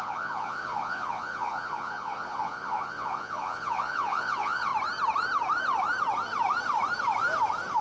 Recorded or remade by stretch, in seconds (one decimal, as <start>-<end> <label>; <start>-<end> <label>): 0.0-4.7 remade; 4.7-7.8 recorded